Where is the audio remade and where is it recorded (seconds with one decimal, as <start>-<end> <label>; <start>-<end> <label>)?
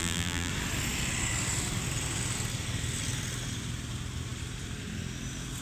0.0-0.5 remade; 0.5-5.6 recorded